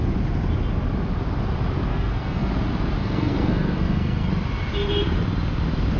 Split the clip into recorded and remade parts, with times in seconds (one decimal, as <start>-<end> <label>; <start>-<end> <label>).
0.0-1.9 recorded; 1.9-2.5 remade; 2.5-3.0 recorded; 3.0-4.3 remade; 4.3-6.0 recorded